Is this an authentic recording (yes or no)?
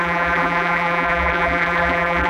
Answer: no